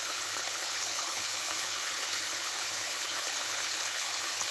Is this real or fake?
fake